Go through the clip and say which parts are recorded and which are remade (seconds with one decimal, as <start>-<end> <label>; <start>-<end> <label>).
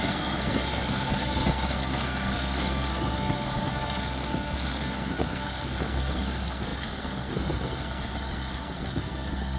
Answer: 0.0-9.6 remade